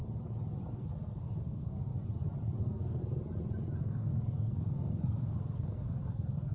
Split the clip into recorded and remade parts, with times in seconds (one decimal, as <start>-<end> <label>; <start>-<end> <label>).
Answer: 0.0-0.7 recorded; 0.7-1.9 remade; 1.9-2.6 recorded; 2.6-3.0 remade; 3.0-3.8 recorded; 3.8-6.5 remade